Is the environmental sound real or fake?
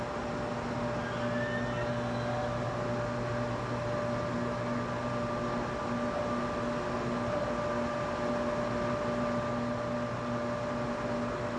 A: real